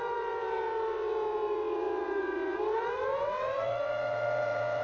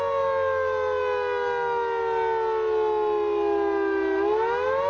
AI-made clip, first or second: first